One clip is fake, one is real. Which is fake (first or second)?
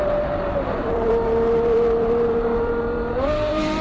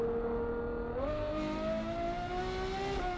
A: first